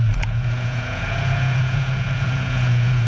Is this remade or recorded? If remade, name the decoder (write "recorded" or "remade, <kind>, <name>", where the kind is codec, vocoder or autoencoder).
remade, vocoder, Vocos